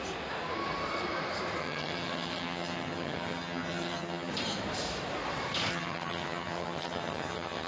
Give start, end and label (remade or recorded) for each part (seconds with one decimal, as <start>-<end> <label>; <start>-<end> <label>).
0.0-1.6 recorded; 1.6-4.3 remade; 4.3-5.7 recorded; 5.7-7.7 remade